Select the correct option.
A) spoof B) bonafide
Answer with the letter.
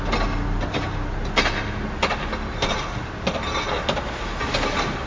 B